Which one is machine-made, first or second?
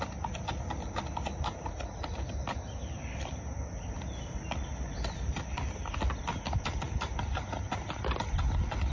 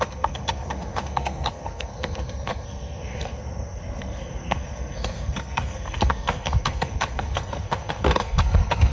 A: second